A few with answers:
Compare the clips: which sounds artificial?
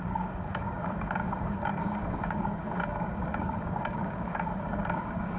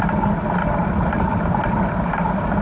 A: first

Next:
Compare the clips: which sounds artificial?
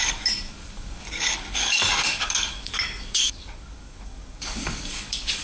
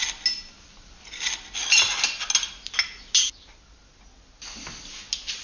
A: first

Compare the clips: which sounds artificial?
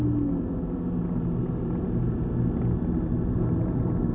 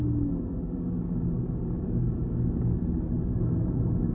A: second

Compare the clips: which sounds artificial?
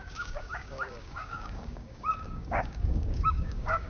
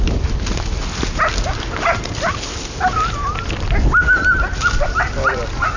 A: first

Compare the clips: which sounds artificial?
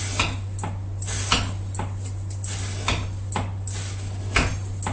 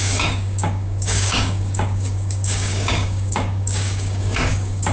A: second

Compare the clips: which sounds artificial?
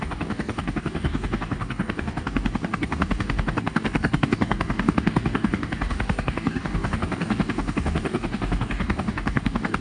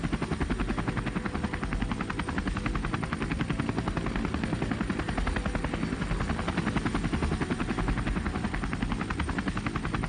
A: first